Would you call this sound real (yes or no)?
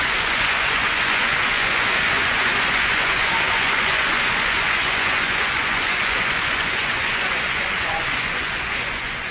no